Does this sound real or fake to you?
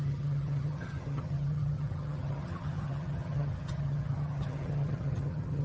fake